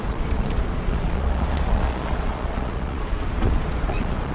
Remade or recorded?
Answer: remade